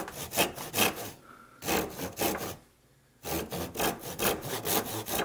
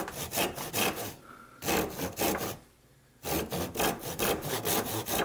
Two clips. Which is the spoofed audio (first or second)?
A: second